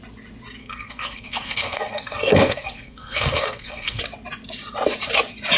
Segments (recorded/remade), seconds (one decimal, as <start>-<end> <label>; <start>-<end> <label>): 0.0-0.6 recorded; 0.6-4.0 remade; 4.0-5.6 recorded